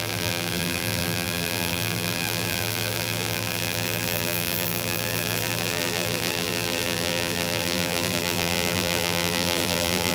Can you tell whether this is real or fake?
fake